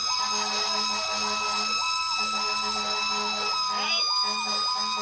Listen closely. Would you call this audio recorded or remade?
recorded